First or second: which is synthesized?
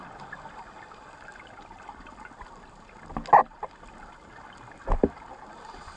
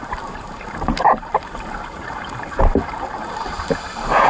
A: second